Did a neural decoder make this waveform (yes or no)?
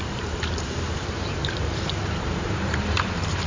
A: yes